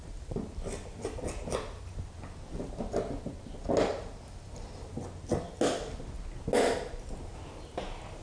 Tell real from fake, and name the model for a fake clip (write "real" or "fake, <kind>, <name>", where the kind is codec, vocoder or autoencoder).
real